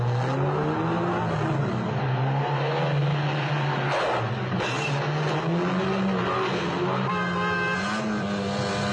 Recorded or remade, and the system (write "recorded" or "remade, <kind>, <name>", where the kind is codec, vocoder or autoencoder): recorded